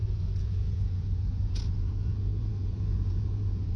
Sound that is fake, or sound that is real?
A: fake